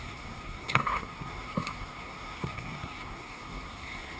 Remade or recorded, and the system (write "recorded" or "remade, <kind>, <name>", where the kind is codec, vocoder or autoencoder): remade, codec, SNAC